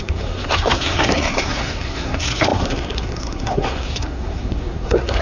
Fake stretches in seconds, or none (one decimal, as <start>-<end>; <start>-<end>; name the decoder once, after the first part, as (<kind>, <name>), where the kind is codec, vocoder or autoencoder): 0.0-5.2 (codec, SNAC)